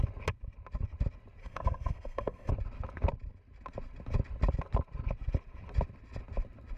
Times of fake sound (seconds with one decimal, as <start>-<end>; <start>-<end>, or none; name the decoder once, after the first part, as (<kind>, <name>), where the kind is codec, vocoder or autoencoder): 1.4-2.5 (codec, SNAC)